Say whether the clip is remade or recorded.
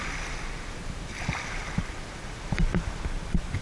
recorded